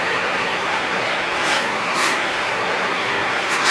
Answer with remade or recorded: remade